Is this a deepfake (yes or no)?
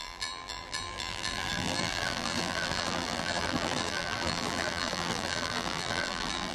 yes